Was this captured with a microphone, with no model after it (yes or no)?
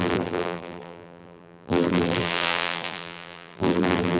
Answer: no